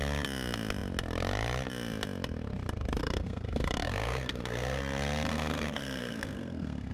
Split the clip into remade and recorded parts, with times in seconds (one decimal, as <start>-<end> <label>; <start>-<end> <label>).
0.0-3.0 recorded; 3.0-4.8 remade; 4.8-5.3 recorded; 5.3-6.9 remade